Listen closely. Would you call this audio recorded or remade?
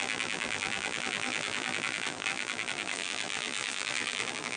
remade